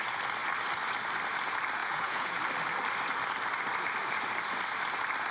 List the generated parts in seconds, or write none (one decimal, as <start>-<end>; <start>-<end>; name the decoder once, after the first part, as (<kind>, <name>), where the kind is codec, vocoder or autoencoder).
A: 1.8-2.4 (vocoder, Vocos)